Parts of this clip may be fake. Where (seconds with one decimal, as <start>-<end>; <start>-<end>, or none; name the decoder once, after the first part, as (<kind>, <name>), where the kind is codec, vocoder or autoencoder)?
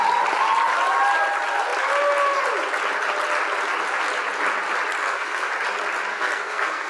5.0-5.5 (codec, SNAC); 6.1-6.9